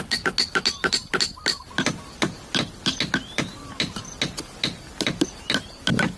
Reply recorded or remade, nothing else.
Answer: recorded